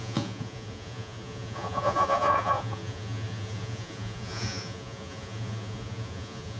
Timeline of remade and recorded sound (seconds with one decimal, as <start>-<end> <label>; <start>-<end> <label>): 0.0-6.6 remade